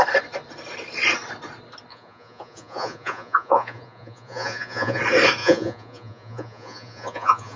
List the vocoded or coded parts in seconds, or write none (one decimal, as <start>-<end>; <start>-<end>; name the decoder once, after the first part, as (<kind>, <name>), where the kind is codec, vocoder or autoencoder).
1.9-5.0 (vocoder, Vocos); 5.4-7.6